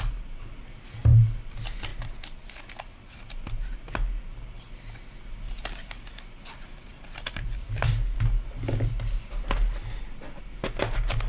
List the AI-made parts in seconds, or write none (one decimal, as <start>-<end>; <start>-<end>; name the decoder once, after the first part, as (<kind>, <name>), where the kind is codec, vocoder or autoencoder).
1.9-3.2 (vocoder, BigVGAN v2); 6.9-7.8